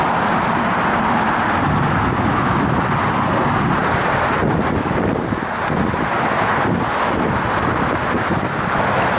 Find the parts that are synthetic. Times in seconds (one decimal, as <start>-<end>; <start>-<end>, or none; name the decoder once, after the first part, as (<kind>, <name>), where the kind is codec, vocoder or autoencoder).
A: 3.8-4.4 (vocoder, BigVGAN v2)